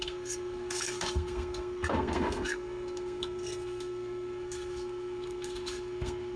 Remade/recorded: remade